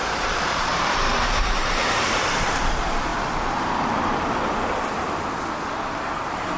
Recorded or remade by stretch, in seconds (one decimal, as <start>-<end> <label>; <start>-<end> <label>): 0.0-3.1 remade; 3.1-5.8 recorded; 5.8-6.6 remade